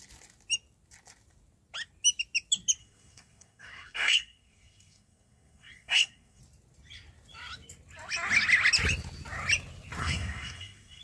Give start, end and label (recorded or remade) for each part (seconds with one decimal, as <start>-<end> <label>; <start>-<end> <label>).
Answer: 0.0-2.8 recorded; 2.8-6.4 remade; 6.4-10.0 recorded; 10.0-11.0 remade